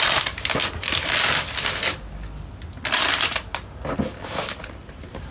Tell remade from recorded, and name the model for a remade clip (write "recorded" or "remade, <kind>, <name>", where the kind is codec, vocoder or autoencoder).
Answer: recorded